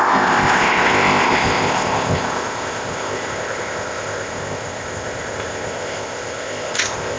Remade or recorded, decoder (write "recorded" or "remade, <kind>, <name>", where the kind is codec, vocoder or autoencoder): remade, codec, ZipCodec